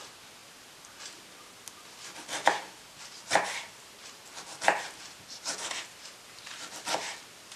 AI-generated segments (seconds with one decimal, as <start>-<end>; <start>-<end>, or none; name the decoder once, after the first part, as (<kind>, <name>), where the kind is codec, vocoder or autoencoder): 2.4-6.4 (vocoder, BigVGAN v2)